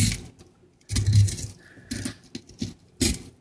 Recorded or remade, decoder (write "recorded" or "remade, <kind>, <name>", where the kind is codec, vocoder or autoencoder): recorded